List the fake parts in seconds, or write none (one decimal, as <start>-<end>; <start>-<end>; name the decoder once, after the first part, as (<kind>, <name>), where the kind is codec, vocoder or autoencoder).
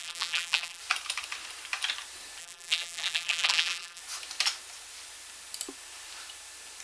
0.0-0.8 (vocoder, BigVGAN v2); 2.4-4.0